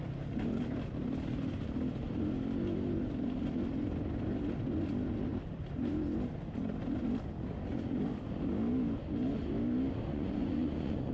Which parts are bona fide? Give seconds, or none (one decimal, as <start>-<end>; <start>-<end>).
0.0-10.1

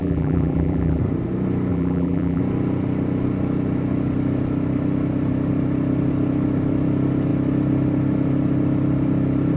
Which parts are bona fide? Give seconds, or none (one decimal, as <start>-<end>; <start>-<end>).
1.0-1.7; 2.4-9.6

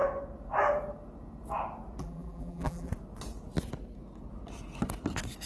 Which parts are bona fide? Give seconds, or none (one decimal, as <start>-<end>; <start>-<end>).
0.0-2.0; 2.9-5.5

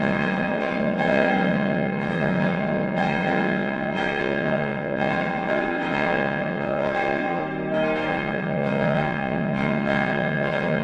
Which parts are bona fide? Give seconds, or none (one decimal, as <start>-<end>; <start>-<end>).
7.4-8.1